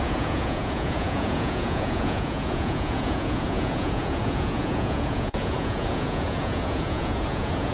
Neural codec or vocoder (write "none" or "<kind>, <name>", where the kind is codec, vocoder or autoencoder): vocoder, Vocos